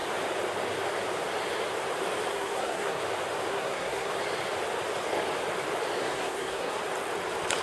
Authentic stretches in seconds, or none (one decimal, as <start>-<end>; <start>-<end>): 0.0-2.3; 3.0-3.5; 4.1-6.0; 6.8-7.6